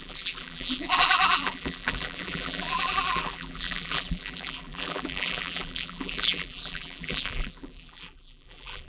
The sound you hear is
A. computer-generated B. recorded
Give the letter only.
A